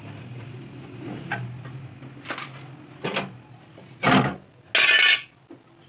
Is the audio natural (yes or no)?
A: yes